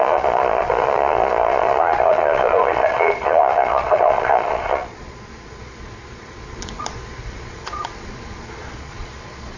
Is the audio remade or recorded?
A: remade